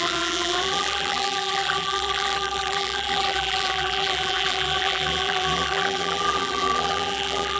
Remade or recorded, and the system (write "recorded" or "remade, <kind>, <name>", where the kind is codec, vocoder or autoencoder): remade, vocoder, BigVGAN v2